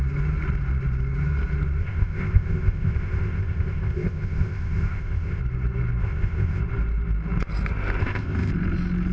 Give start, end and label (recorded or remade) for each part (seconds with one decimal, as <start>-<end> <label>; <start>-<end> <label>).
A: 0.0-1.8 recorded; 1.8-5.4 remade; 5.4-6.0 recorded; 6.0-6.6 remade; 6.6-8.0 recorded; 8.0-8.5 remade; 8.5-9.1 recorded

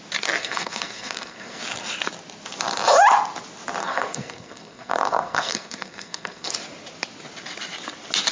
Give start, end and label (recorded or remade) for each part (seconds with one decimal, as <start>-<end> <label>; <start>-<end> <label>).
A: 0.0-0.4 recorded; 0.4-1.6 remade; 1.6-3.8 recorded; 3.8-6.5 remade; 6.5-8.3 recorded

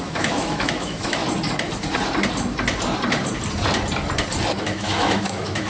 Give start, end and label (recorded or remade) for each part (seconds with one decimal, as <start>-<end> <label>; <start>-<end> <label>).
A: 0.0-1.2 remade; 1.2-4.6 recorded; 4.6-5.7 remade

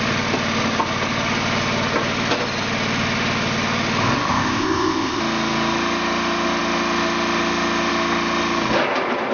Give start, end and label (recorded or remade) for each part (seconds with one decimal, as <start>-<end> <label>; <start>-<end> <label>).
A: 0.0-4.3 recorded; 4.3-5.2 remade; 5.2-9.3 recorded